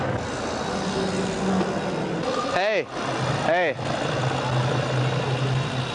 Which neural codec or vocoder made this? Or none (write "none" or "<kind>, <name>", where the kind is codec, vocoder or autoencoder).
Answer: none